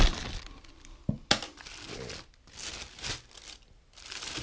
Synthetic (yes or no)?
no